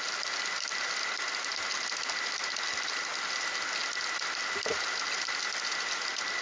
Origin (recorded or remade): recorded